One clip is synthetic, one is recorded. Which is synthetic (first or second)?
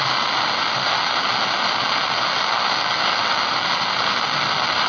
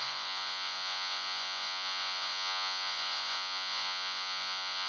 second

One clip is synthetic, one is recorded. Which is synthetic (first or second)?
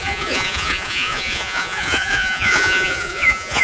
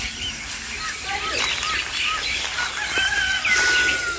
first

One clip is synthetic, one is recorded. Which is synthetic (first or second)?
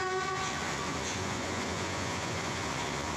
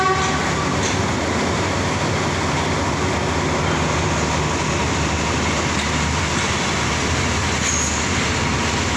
first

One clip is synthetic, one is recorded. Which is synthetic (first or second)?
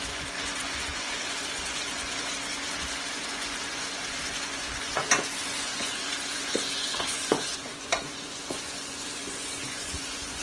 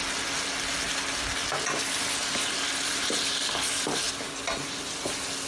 first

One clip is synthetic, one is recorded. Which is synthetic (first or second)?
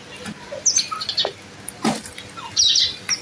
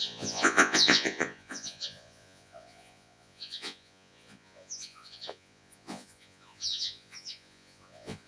second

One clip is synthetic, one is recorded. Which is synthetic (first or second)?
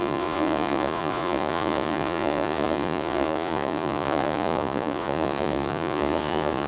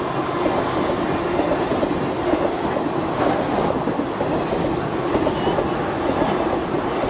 first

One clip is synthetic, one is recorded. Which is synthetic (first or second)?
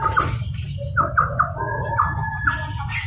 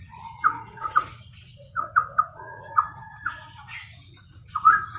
second